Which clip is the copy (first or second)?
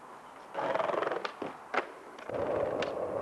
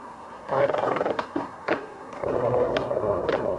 second